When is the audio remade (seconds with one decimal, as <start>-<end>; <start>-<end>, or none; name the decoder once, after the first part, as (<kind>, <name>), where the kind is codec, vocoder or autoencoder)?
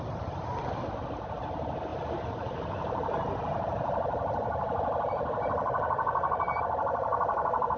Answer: 0.0-7.8 (vocoder, BigVGAN v2)